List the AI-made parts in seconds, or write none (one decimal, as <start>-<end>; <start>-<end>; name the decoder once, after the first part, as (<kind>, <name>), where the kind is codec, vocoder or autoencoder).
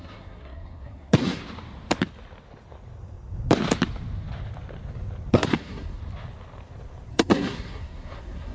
0.0-1.4 (codec, SNAC); 5.3-6.0; 7.1-8.5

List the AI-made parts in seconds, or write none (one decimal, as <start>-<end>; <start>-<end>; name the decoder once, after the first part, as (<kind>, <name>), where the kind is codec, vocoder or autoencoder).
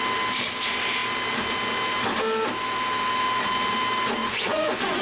4.2-5.0 (vocoder, Vocos)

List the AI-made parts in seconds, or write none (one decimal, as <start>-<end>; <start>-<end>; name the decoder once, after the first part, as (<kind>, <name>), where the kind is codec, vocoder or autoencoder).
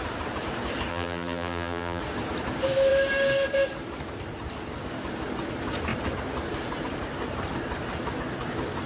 0.9-2.0 (vocoder, BigVGAN v2)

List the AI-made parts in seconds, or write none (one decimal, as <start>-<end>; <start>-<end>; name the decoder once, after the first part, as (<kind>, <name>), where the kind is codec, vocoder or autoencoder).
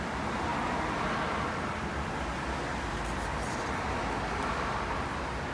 none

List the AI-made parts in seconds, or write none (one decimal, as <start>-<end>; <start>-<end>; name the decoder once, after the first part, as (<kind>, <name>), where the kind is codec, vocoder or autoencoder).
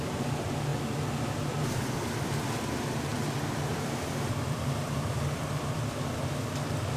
0.0-0.7 (vocoder, BigVGAN v2); 1.6-3.1; 3.7-7.0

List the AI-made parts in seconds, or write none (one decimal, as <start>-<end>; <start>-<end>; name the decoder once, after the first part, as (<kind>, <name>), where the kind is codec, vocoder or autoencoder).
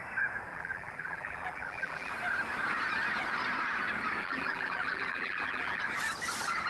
0.5-2.1 (vocoder, BigVGAN v2); 4.2-5.8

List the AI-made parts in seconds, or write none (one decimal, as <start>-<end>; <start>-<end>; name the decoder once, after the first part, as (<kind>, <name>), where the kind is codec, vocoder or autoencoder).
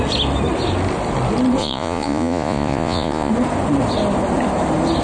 1.6-3.3 (vocoder, Vocos)